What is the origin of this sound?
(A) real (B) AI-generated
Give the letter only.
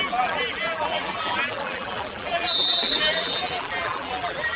B